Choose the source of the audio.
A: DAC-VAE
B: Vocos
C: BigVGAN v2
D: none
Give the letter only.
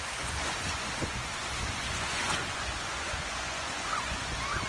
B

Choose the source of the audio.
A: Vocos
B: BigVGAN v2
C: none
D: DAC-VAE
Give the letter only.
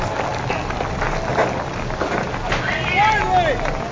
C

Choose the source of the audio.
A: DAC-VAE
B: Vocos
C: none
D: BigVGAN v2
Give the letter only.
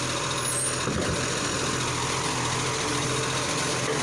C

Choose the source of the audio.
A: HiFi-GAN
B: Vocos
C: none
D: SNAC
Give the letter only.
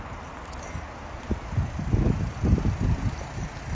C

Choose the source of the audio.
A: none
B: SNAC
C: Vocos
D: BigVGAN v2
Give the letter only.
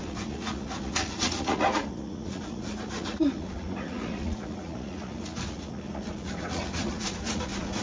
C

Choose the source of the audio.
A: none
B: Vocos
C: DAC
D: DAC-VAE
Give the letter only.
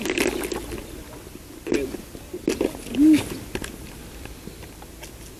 A